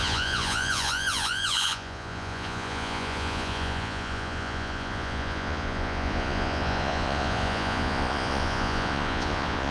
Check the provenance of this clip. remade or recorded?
remade